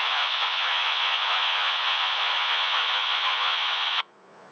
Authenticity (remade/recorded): remade